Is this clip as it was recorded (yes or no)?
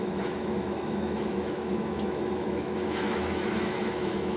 no